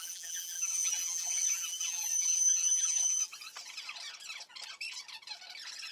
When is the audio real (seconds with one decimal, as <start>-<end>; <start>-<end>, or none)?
3.3-5.9

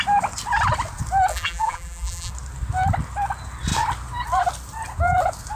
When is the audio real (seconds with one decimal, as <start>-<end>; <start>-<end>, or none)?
0.0-1.3; 2.3-5.6

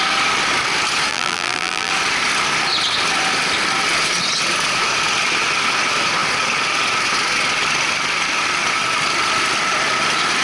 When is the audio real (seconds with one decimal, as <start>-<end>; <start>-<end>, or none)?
0.0-1.1; 1.9-10.4

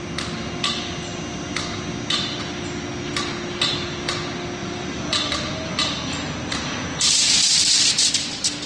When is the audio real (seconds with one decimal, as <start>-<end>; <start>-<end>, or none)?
0.0-4.6; 7.7-8.7

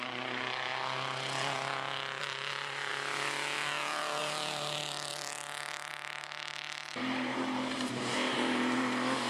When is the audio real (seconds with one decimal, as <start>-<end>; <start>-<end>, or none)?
0.7-2.2; 2.9-4.2; 4.8-5.5